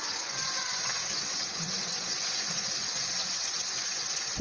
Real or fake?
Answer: fake